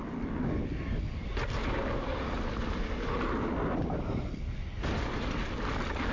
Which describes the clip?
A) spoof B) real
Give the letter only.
B